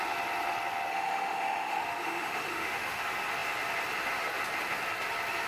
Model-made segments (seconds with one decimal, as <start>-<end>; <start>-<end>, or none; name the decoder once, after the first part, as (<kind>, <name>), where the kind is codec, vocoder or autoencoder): 0.9-3.0 (autoencoder, DAC-VAE)